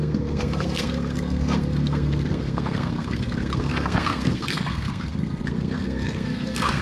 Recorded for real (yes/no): no